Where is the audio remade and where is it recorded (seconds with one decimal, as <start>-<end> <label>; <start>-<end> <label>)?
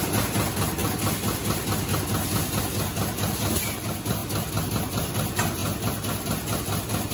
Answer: 0.0-7.1 recorded